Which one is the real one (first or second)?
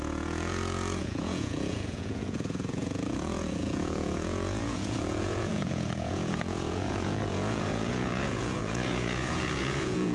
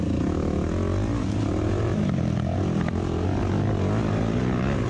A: second